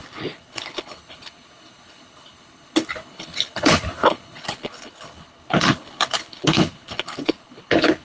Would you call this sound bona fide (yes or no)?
no